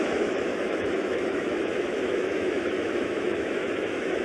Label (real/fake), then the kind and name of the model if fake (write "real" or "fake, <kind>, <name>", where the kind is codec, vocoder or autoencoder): fake, autoencoder, DAC-VAE